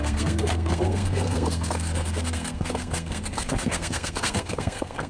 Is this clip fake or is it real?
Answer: fake